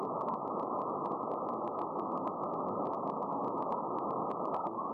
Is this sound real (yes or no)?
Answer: no